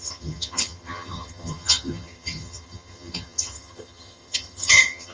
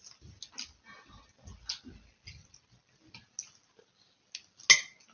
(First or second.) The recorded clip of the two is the second